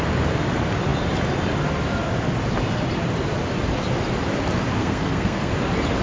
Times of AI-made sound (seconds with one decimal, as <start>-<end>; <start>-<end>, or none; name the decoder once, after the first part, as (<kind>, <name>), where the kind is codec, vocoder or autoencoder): 4.8-5.5 (codec, SNAC)